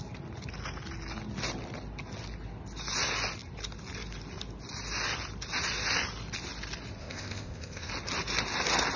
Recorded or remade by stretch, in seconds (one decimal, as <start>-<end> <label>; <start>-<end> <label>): 0.0-7.0 recorded; 7.0-7.9 remade; 7.9-9.0 recorded